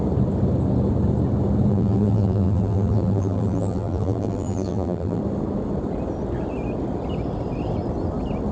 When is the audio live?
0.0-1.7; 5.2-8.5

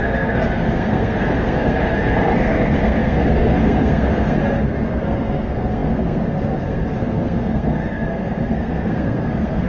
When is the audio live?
none

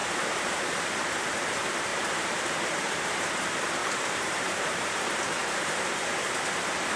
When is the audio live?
0.6-1.9; 3.3-3.8; 5.0-5.4; 5.9-7.0

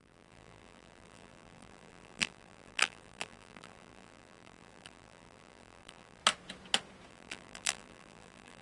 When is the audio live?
6.2-7.1

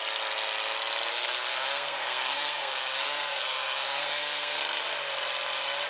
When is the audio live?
0.0-1.1; 4.6-5.9

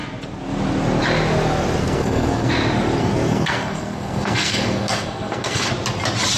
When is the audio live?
0.0-1.8; 2.5-3.0; 5.7-6.4

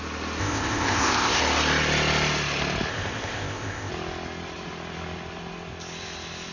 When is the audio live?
0.0-0.4; 1.4-2.9; 3.9-6.5